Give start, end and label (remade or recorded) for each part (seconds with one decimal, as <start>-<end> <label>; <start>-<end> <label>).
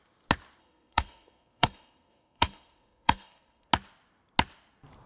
0.0-0.6 recorded; 0.6-3.7 remade; 3.7-5.1 recorded